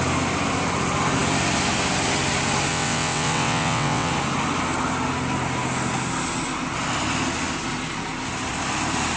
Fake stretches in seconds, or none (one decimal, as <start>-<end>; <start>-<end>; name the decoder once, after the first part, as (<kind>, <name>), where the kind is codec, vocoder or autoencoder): 2.7-4.1 (vocoder, WaveNeXt)